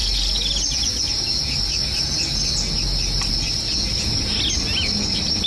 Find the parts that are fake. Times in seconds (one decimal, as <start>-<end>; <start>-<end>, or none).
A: none